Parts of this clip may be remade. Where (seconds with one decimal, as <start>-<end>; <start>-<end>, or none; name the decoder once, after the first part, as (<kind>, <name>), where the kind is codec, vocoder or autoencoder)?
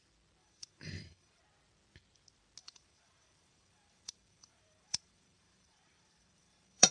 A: 0.4-1.4 (vocoder, BigVGAN v2); 2.6-6.9